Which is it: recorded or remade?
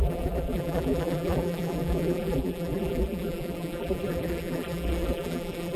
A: remade